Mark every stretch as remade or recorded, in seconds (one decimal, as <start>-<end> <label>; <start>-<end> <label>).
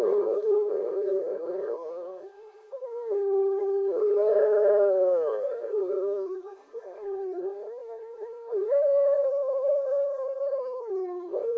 0.0-11.6 remade